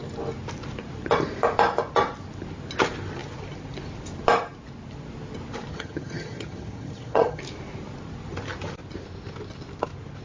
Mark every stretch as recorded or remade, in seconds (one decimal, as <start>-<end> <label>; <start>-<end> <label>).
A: 0.0-5.7 recorded; 5.7-7.4 remade; 7.4-10.2 recorded